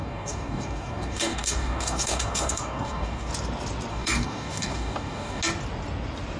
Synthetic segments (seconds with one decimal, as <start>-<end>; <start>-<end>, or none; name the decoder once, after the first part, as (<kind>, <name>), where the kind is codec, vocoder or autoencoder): 0.0-3.3 (codec, DAC); 3.9-5.4